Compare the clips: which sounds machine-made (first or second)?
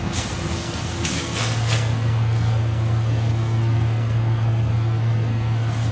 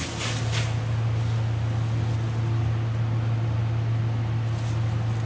first